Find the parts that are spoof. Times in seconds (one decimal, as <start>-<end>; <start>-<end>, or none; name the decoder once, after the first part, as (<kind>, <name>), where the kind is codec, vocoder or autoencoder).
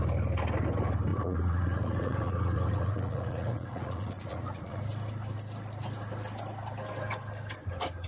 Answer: 1.1-4.8 (vocoder, Vocos)